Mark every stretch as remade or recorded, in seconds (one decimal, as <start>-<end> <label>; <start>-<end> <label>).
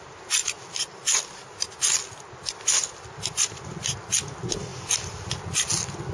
0.0-4.7 recorded; 4.7-5.3 remade; 5.3-6.1 recorded